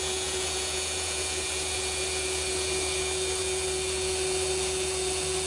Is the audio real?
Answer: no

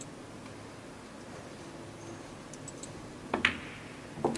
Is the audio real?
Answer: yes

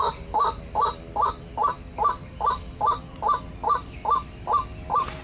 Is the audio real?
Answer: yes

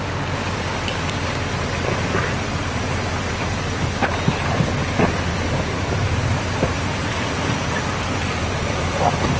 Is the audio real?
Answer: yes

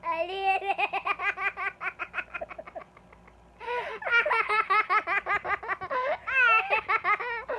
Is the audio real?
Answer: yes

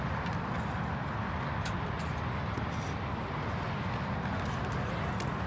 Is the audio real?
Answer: yes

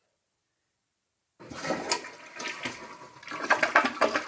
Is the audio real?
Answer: yes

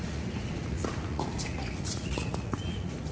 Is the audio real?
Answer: no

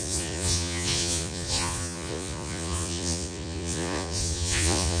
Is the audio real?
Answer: no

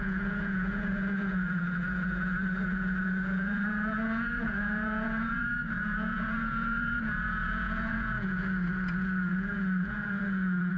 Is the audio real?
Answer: no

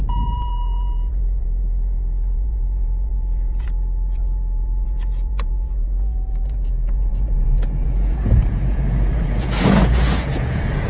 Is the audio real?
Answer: no